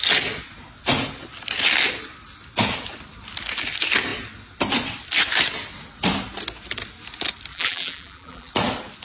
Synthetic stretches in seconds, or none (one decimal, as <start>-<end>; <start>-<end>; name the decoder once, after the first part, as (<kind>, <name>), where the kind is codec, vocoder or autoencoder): 7.5-8.5 (vocoder, BigVGAN v2)